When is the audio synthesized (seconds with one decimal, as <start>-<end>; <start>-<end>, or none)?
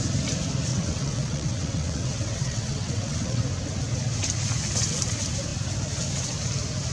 0.7-3.4